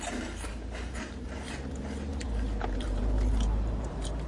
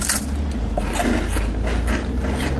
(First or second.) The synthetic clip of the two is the first